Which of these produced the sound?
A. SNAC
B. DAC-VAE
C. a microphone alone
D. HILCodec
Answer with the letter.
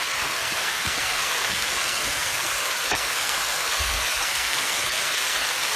A